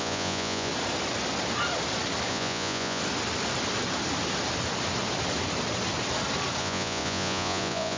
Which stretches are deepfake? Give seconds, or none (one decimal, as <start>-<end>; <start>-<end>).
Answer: 0.0-0.7; 2.3-3.0; 6.6-8.0